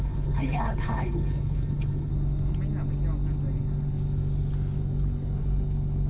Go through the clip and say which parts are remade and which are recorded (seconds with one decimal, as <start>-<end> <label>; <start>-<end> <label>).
0.0-2.1 remade; 2.1-6.1 recorded